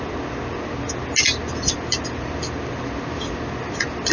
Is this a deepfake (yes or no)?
no